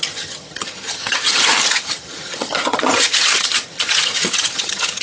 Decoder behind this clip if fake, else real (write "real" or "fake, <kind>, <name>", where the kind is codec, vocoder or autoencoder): fake, vocoder, HiFi-GAN